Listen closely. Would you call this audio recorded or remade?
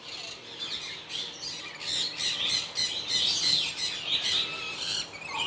recorded